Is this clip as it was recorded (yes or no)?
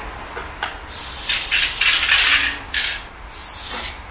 yes